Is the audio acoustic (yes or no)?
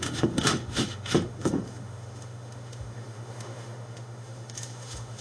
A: no